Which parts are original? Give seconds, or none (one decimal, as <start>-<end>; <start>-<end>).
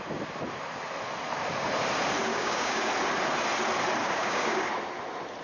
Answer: 0.0-2.3; 2.9-4.0; 4.7-5.4